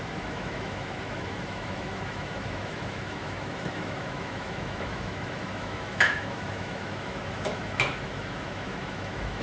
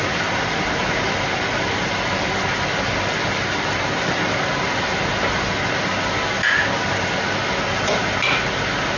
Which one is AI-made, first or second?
first